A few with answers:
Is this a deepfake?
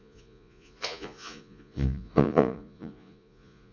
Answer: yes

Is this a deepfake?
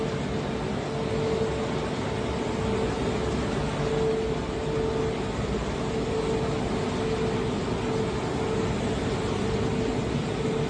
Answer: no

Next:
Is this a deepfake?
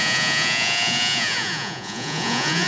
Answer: yes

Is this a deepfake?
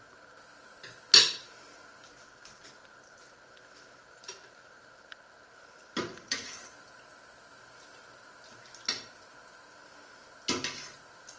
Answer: no